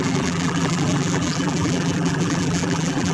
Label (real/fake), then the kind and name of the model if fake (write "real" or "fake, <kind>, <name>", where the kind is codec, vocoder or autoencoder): fake, vocoder, BigVGAN v2